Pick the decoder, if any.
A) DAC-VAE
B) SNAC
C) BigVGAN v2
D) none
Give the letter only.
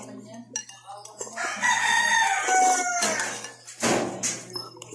D